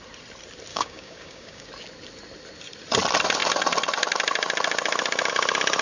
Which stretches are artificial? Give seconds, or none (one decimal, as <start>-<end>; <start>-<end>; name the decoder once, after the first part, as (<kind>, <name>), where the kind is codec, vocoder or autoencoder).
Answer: 0.7-1.7 (codec, DAC)